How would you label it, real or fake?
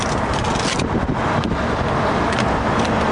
real